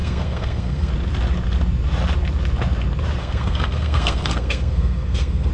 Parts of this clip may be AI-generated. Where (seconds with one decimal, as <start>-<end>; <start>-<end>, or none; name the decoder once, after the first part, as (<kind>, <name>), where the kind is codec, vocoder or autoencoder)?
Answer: 0.0-0.9 (codec, SNAC); 3.2-5.5

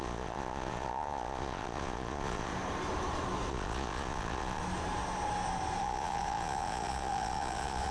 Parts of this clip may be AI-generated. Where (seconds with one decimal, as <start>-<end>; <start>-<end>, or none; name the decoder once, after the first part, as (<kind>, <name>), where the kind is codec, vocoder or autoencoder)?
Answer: 0.0-2.5 (vocoder, Vocos); 3.5-4.6; 5.8-7.9

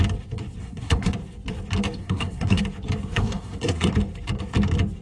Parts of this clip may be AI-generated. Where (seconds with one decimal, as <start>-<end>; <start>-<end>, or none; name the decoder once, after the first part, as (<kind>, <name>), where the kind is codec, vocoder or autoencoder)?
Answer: 0.6-1.1 (codec, SNAC); 2.0-2.6; 3.1-3.9

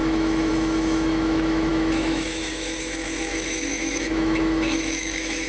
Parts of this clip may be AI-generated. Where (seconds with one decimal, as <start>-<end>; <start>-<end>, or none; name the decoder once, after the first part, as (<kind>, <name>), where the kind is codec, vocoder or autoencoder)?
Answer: 0.0-5.5 (autoencoder, DAC-VAE)